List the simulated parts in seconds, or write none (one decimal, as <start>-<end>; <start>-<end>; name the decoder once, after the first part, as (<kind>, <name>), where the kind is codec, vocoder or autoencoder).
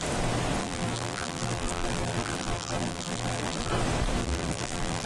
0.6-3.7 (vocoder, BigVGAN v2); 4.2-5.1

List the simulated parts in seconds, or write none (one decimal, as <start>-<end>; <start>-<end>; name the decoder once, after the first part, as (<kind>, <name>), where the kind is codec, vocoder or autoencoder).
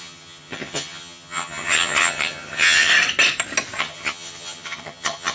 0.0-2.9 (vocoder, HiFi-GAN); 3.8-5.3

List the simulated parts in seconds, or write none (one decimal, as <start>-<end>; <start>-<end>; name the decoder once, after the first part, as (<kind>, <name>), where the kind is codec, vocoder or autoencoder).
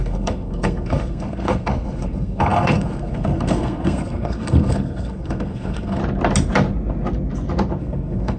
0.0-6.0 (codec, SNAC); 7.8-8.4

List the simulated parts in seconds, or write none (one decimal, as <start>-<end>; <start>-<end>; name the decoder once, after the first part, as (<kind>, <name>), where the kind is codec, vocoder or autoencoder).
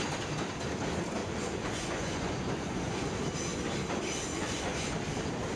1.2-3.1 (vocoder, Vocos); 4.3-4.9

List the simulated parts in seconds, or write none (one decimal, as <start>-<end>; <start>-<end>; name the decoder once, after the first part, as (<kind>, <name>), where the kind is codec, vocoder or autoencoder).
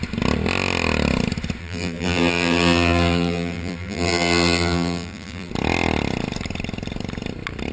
1.6-5.5 (vocoder, BigVGAN v2)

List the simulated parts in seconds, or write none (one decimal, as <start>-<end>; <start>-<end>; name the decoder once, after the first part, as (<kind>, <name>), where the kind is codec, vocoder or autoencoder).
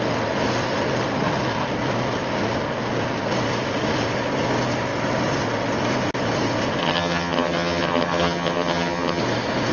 6.8-9.2 (vocoder, HiFi-GAN)